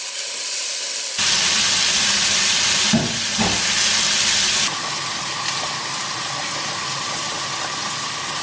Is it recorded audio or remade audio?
recorded